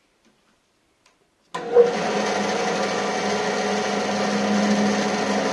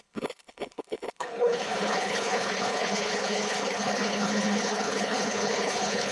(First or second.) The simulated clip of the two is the second